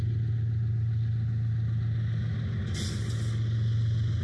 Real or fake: real